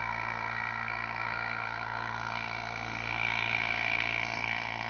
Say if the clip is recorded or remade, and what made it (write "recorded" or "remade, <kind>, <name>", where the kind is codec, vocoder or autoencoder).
remade, codec, SNAC